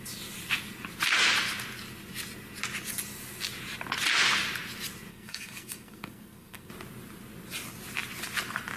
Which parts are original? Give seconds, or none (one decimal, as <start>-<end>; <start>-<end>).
0.0-5.1; 6.7-8.8